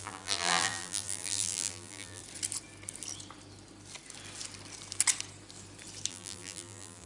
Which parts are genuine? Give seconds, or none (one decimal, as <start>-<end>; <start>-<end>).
2.2-6.1